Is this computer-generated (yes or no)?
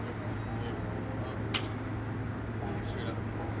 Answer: no